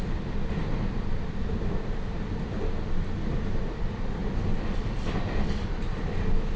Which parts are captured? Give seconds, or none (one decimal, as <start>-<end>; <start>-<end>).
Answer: 0.0-6.6